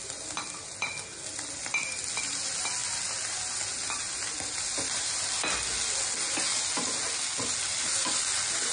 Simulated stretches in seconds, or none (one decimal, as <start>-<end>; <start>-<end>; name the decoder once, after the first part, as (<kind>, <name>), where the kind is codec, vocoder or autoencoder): none